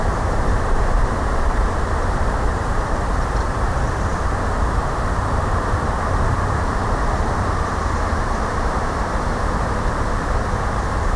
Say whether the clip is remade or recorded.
remade